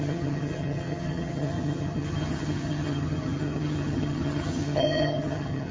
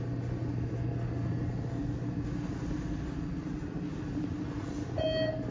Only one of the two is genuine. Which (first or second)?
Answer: second